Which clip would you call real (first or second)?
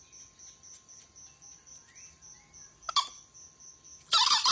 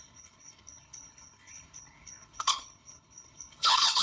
first